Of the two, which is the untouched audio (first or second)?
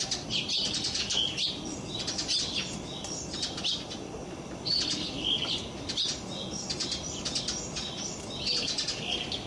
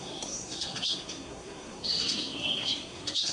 first